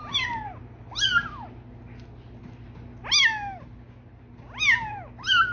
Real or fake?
real